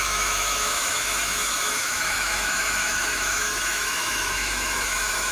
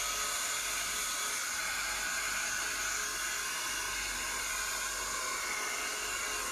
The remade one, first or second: first